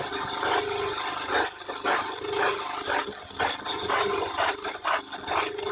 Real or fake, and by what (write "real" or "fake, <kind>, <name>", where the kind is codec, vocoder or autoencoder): real